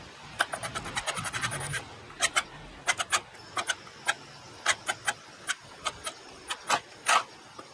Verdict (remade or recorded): recorded